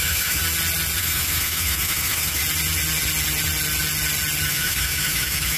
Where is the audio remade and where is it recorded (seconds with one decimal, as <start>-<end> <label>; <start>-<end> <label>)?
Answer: 0.0-0.4 remade; 0.4-1.0 recorded; 1.0-2.4 remade; 2.4-4.5 recorded; 4.5-5.6 remade